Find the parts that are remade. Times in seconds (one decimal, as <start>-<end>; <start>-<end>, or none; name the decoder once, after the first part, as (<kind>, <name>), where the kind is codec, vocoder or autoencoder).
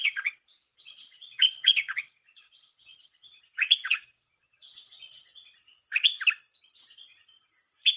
0.0-6.1 (vocoder, Vocos); 6.8-8.0